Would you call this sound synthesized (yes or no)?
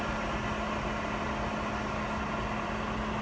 no